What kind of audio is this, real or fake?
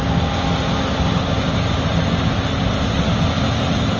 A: real